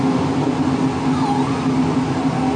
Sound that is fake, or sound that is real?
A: real